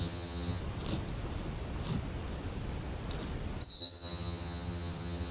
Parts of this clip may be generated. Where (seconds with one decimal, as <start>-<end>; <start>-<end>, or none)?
0.0-0.6; 3.8-5.3